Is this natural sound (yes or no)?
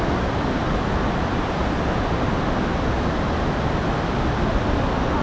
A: yes